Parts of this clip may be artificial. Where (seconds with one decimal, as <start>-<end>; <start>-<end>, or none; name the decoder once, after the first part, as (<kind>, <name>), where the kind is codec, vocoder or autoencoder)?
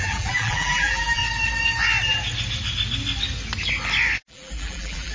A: 0.0-1.2 (vocoder, BigVGAN v2); 4.3-5.1